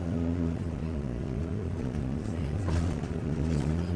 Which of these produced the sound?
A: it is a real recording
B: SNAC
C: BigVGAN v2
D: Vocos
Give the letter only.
D